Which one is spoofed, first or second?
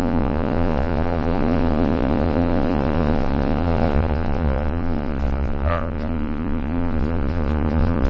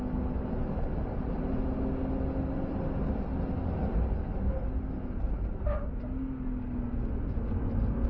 first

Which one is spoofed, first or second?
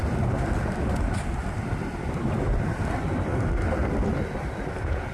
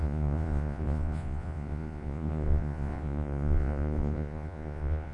second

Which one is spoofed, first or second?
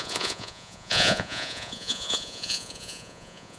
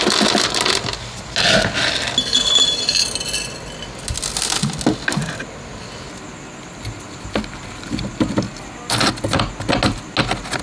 first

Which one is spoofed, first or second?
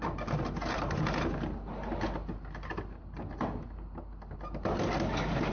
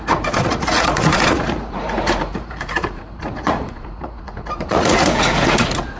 second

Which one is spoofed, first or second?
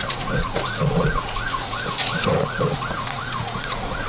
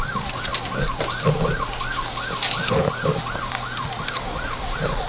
first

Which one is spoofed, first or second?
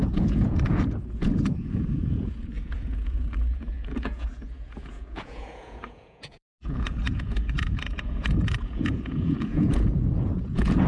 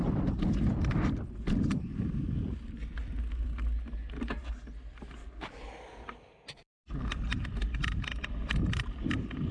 first